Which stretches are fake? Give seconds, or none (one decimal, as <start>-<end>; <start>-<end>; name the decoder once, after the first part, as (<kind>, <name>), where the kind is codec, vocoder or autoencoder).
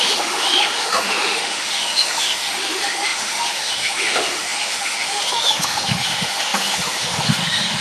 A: 0.0-7.8 (autoencoder, DAC-VAE)